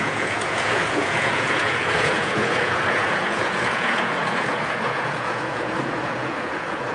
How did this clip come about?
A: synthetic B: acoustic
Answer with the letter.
A